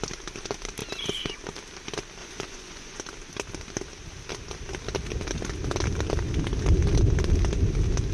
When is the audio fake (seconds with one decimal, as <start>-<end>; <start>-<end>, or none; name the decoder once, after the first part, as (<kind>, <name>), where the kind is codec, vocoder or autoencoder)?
2.2-3.0 (vocoder, Vocos)